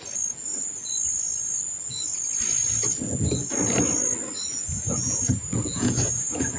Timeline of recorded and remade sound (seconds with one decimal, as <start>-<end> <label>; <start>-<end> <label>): 0.0-4.5 recorded; 4.5-6.6 remade